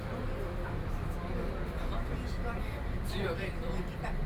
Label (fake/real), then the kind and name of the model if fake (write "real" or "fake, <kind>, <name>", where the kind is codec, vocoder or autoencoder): fake, vocoder, BigVGAN v2